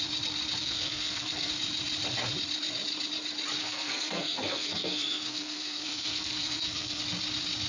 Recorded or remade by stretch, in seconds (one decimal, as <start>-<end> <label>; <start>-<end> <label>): 0.0-0.6 recorded; 0.6-1.5 remade; 1.5-3.6 recorded; 3.6-7.0 remade; 7.0-7.7 recorded